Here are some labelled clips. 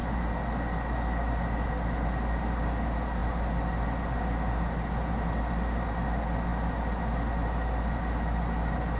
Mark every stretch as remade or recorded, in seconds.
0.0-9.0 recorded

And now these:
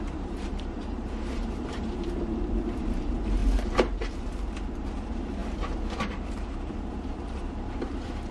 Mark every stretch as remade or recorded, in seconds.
0.0-3.4 remade; 3.4-4.7 recorded; 4.7-5.4 remade; 5.4-6.0 recorded; 6.0-8.3 remade